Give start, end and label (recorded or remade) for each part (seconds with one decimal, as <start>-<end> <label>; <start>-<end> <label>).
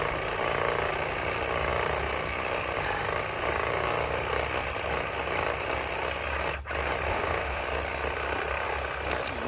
0.0-7.1 recorded; 7.1-7.6 remade; 7.6-9.5 recorded